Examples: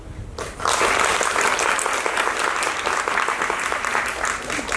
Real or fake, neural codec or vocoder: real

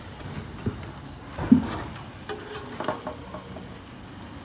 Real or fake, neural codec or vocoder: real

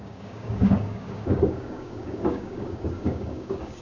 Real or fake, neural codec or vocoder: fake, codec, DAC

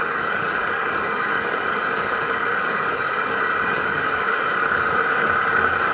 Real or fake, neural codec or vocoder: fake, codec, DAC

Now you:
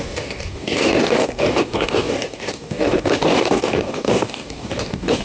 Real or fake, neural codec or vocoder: fake, codec, DAC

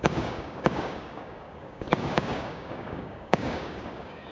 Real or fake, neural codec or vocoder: fake, codec, DAC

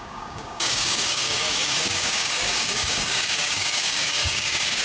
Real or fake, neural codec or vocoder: fake, codec, DAC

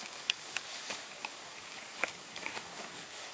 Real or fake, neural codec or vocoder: fake, codec, DAC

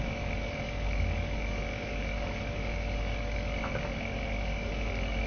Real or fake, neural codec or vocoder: fake, codec, DAC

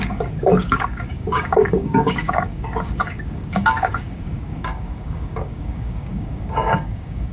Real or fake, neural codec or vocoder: fake, codec, DAC